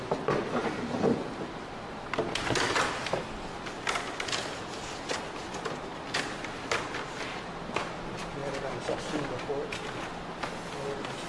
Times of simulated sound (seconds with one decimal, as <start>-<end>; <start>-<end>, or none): 0.6-1.6